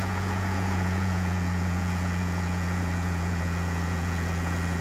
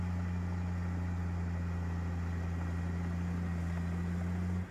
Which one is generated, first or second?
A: first